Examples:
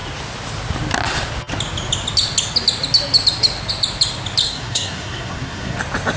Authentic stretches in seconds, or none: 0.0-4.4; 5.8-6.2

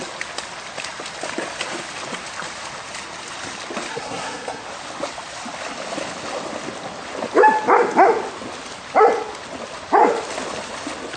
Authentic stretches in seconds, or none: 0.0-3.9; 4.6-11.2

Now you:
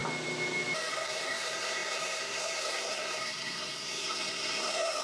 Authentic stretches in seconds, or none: 0.0-0.9

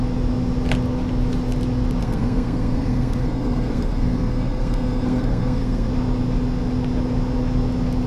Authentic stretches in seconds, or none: 0.0-2.0; 5.9-8.1